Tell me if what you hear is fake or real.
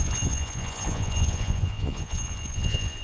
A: fake